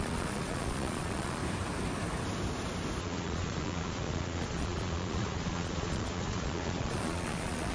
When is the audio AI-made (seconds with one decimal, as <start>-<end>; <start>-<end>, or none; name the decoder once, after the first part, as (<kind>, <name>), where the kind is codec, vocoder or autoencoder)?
0.0-1.4 (vocoder, Vocos); 3.0-7.7